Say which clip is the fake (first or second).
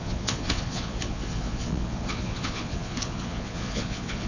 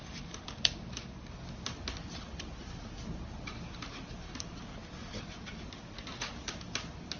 first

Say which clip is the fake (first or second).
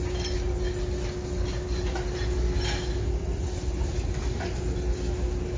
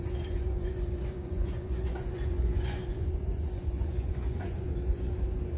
second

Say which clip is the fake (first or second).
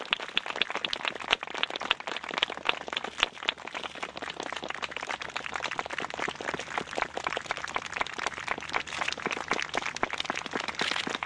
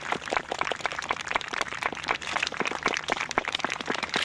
second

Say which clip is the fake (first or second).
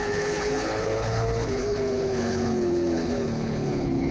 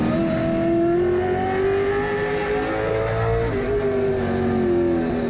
first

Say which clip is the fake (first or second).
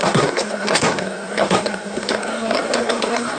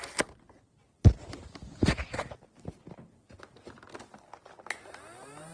first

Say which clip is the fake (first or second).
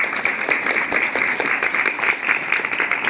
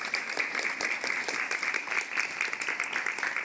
second